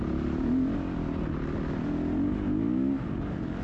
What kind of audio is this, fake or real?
real